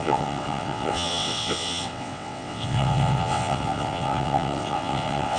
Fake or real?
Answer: fake